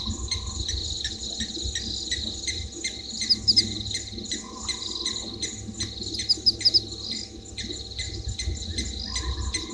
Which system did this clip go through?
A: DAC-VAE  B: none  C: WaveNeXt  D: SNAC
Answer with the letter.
B